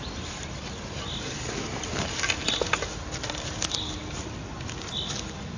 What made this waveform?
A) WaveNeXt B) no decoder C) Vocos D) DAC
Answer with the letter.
B